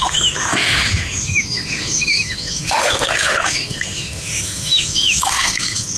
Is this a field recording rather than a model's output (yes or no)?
no